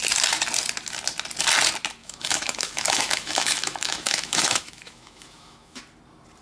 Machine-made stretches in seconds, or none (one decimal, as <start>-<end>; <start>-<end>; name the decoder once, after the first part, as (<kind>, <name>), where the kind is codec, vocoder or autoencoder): 2.0-5.8 (autoencoder, DAC-VAE)